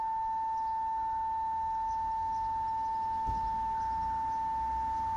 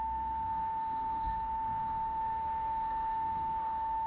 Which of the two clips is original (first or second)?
first